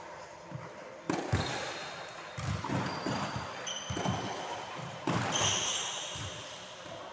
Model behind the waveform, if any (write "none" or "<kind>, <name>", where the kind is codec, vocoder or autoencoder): none